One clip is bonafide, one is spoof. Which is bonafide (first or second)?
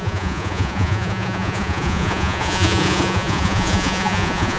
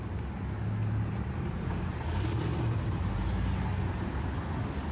second